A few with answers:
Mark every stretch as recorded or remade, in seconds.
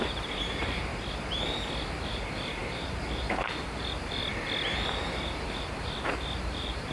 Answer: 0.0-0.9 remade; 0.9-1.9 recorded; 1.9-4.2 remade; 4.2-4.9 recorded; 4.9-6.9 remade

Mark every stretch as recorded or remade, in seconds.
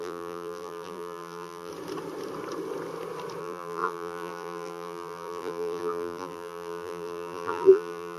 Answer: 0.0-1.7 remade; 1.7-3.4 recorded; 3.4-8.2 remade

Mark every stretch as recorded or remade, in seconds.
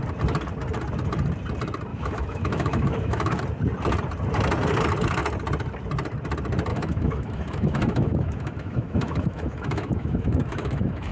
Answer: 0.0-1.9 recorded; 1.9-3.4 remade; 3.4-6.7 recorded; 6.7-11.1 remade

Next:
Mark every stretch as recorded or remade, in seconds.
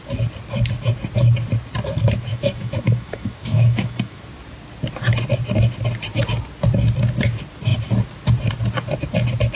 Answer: 0.0-2.3 recorded; 2.3-4.2 remade; 4.2-9.6 recorded